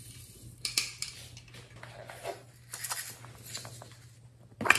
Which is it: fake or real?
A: real